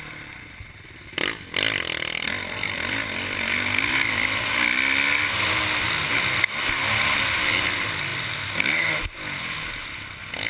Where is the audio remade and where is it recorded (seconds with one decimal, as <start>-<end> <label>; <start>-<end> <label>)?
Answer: 0.0-10.5 recorded